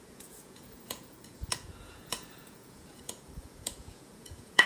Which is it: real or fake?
fake